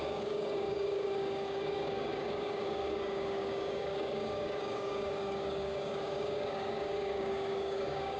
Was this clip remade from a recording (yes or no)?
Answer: yes